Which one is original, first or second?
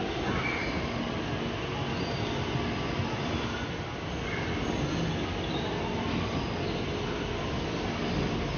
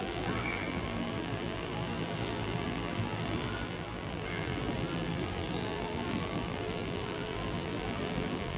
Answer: first